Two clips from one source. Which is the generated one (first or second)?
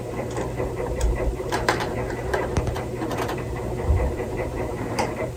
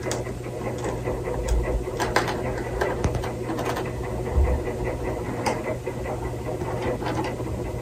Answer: first